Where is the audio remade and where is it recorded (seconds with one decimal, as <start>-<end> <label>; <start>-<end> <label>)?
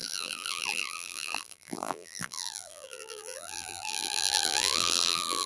0.0-5.5 remade